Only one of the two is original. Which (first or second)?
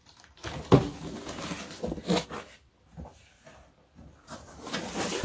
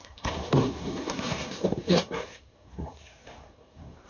first